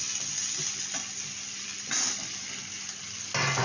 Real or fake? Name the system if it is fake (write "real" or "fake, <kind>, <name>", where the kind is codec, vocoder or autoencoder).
real